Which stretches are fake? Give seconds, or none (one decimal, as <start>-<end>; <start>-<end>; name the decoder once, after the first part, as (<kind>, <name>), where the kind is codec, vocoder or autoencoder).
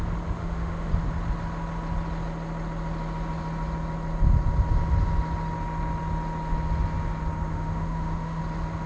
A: 0.4-0.9 (autoencoder, DAC-VAE); 7.5-8.4